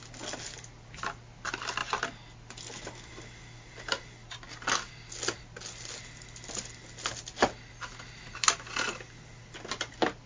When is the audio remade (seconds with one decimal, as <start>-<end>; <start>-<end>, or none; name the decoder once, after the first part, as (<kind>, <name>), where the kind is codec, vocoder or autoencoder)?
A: none